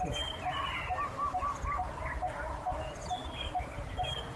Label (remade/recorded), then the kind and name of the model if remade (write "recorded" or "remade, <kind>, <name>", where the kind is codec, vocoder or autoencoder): recorded